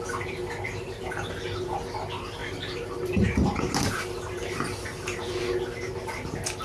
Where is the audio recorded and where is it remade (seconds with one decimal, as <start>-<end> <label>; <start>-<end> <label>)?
0.0-6.6 recorded